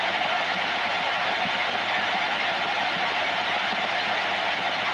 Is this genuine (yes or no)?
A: yes